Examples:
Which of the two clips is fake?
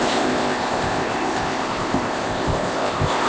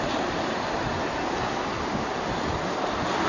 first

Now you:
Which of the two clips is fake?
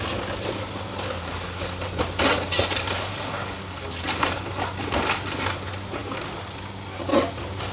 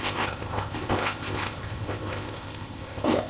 second